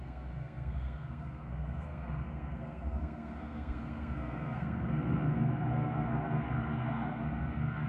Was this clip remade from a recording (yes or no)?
yes